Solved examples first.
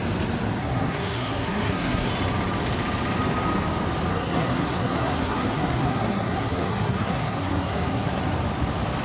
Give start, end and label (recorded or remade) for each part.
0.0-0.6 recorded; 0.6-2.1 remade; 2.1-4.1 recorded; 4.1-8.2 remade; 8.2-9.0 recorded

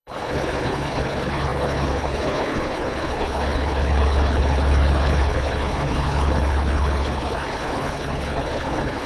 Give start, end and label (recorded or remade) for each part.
0.0-9.1 remade

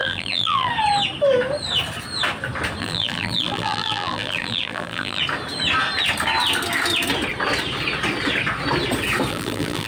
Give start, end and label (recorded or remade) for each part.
0.0-0.7 remade; 0.7-2.8 recorded; 2.8-5.2 remade; 5.2-9.3 recorded; 9.3-9.9 remade

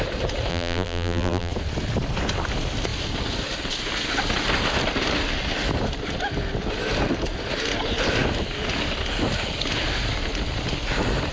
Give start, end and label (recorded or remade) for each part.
0.0-0.5 recorded; 0.5-1.5 remade; 1.5-11.3 recorded

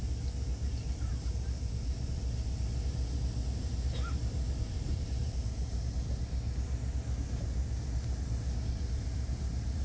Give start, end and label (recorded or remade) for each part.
0.0-0.5 recorded; 0.5-2.2 remade; 2.2-3.6 recorded; 3.6-5.8 remade; 5.8-9.8 recorded